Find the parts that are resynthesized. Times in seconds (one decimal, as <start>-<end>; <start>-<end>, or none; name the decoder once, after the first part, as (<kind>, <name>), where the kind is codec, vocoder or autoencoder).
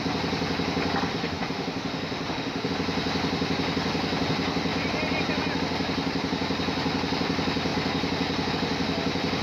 1.1-2.7 (autoencoder, DAC-VAE)